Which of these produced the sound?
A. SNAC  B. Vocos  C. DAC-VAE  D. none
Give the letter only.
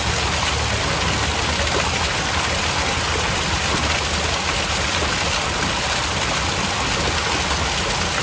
D